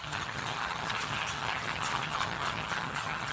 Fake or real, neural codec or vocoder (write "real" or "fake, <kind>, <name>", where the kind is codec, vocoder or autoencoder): fake, vocoder, HiFi-GAN